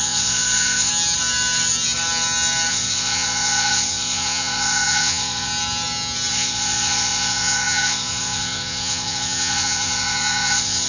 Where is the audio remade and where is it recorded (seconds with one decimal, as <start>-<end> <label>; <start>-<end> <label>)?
0.0-0.9 remade; 0.9-2.7 recorded; 2.7-5.5 remade; 5.5-6.3 recorded; 6.3-10.9 remade